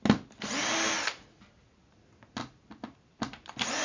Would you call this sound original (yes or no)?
yes